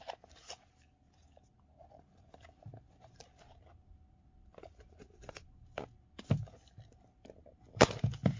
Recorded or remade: remade